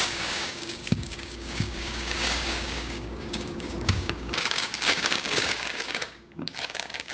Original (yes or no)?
no